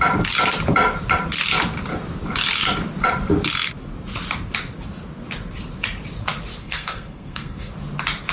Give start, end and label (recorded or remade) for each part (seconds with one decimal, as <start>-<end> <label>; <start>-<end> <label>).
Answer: 0.0-6.6 recorded; 6.6-7.7 remade; 7.7-8.3 recorded